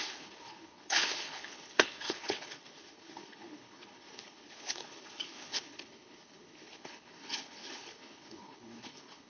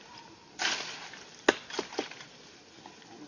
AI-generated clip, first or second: first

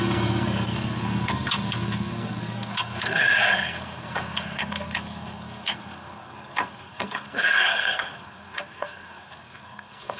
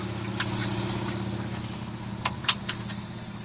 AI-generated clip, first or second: first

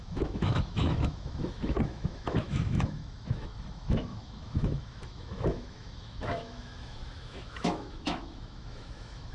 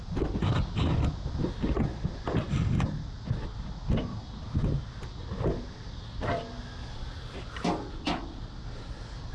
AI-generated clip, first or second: first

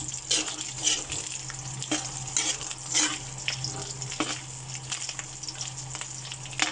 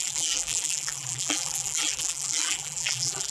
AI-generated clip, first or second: second